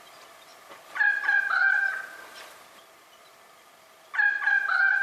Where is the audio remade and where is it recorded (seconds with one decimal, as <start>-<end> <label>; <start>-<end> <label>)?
0.0-5.0 recorded